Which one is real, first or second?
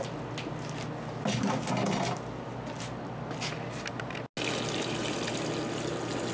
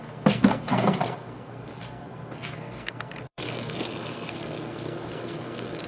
first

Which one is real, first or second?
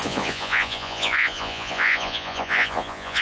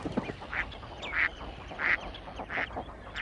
second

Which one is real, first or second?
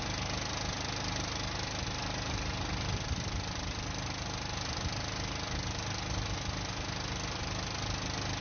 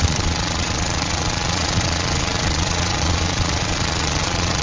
first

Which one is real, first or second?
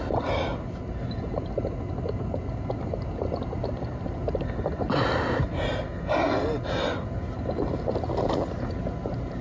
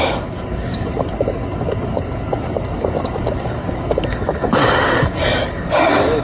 first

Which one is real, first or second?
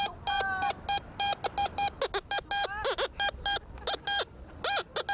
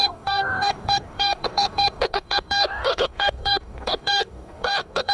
first